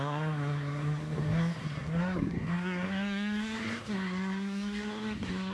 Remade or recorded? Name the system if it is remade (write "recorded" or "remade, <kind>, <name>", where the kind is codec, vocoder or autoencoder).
remade, codec, SNAC